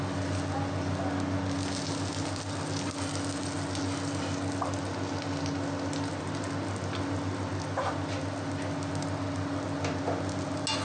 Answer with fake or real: real